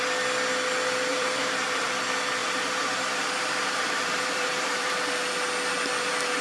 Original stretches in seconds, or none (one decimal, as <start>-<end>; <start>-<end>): 0.0-1.1; 1.9-2.4; 4.9-6.4